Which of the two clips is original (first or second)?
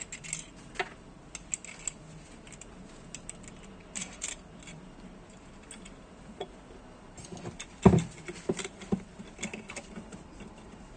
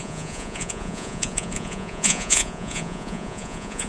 first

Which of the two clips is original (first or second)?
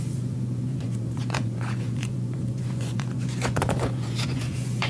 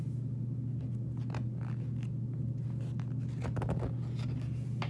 second